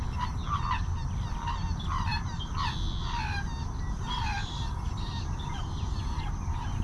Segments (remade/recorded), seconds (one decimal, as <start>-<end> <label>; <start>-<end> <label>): 0.0-6.8 recorded

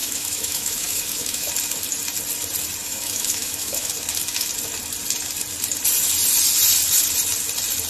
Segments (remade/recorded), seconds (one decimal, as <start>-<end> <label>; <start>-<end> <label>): 0.0-1.5 remade; 1.5-2.8 recorded; 2.8-3.9 remade; 3.9-7.9 recorded

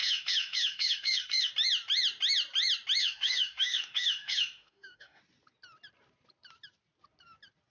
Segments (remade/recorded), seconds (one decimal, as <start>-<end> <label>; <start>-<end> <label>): 0.0-1.5 remade; 1.5-3.0 recorded; 3.0-5.2 remade; 5.2-7.7 recorded

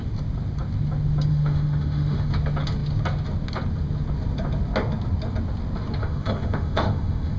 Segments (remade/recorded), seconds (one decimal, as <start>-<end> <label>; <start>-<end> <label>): 0.0-1.3 recorded; 1.3-2.3 remade; 2.3-6.0 recorded; 6.0-7.4 remade

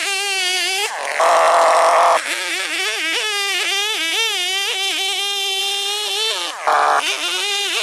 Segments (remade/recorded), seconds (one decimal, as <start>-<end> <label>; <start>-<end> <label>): 0.0-0.9 remade; 0.9-2.2 recorded; 2.2-5.6 remade; 5.6-7.8 recorded

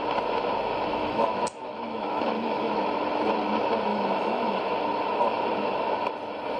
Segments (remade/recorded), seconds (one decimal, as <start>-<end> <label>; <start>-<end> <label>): 0.0-0.9 recorded; 0.9-2.7 remade; 2.7-3.9 recorded; 3.9-4.6 remade; 4.6-6.6 recorded

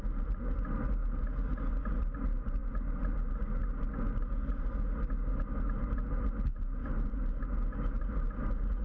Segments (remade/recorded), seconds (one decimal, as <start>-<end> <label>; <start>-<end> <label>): 0.0-8.8 recorded

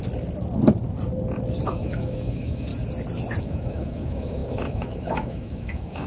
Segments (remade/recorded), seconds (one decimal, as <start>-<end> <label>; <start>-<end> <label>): 0.0-1.7 recorded; 1.7-2.7 remade; 2.7-3.4 recorded; 3.4-6.1 remade